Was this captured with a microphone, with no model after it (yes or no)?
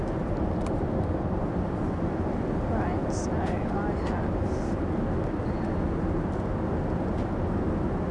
yes